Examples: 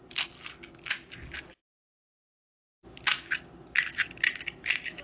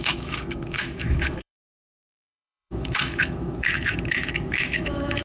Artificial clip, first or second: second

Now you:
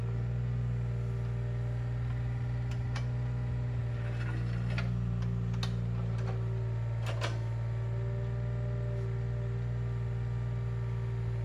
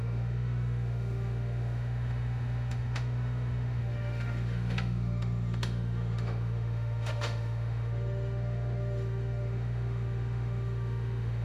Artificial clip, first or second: second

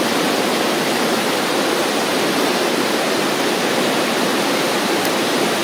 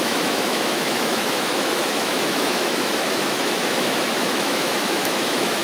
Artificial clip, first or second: second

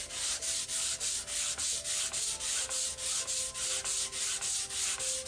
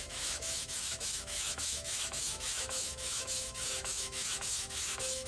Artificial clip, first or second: second